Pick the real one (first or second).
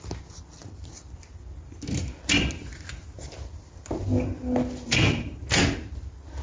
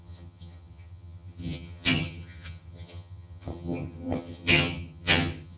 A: first